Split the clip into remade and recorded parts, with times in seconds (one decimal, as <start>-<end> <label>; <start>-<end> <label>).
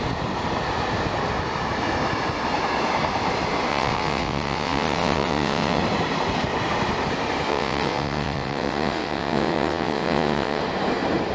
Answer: 0.0-3.7 recorded; 3.7-5.8 remade; 5.8-7.5 recorded; 7.5-10.6 remade; 10.6-11.3 recorded